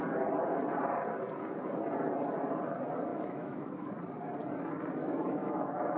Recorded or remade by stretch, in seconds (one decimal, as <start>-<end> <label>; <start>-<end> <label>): 0.0-3.1 recorded; 3.1-3.9 remade; 3.9-5.0 recorded; 5.0-6.0 remade